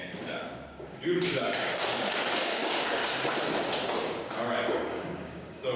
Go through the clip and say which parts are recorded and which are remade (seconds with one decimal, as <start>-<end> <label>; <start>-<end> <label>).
0.0-3.0 remade; 3.0-4.0 recorded; 4.0-5.8 remade